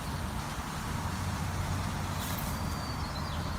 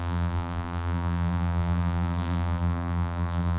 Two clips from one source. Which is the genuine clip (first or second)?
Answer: first